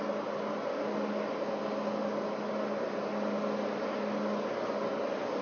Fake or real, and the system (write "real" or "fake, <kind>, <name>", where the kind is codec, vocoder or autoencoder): real